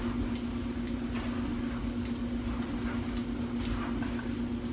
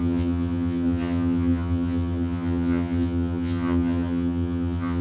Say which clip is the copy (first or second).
second